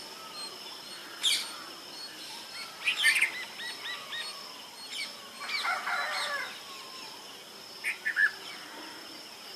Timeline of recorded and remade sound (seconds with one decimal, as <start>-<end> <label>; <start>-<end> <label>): 0.0-9.6 recorded